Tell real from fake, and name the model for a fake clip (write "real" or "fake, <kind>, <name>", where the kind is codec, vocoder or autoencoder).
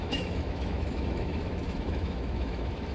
fake, autoencoder, DAC-VAE